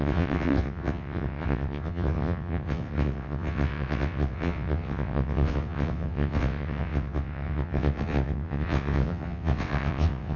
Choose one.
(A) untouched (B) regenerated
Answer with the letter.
B